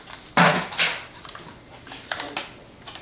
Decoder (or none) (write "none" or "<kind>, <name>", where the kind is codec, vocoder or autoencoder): none